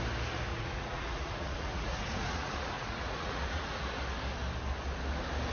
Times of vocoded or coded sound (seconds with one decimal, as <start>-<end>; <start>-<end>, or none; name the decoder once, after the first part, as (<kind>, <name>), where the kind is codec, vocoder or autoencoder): 0.5-3.8 (vocoder, Vocos)